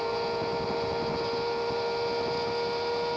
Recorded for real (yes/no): yes